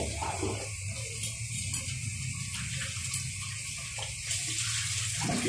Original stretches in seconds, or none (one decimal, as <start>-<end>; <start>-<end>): 0.0-5.5